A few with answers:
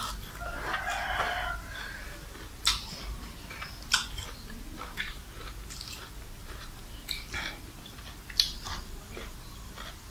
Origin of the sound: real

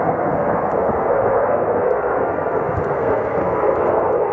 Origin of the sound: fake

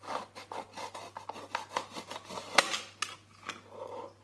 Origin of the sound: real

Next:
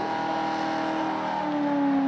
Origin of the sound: real